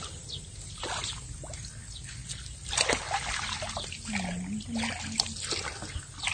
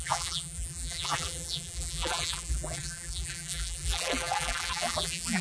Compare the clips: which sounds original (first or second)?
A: first